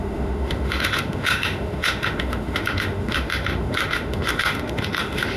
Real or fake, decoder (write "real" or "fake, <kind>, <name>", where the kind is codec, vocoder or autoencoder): fake, autoencoder, DAC-VAE